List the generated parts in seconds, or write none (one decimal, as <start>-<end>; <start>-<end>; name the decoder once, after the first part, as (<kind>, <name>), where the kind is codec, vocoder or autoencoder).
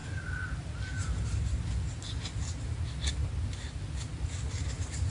none